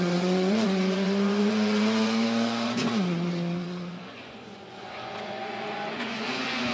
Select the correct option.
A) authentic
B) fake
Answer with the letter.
B